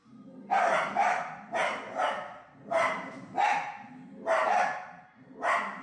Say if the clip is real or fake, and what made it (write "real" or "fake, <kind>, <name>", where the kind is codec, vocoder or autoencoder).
real